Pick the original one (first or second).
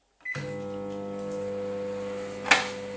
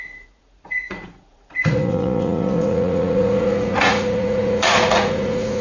first